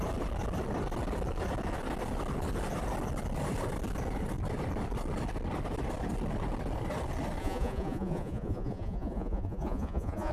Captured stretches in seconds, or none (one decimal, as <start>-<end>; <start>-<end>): 0.0-7.4